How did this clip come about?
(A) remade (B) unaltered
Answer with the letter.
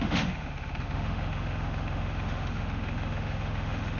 A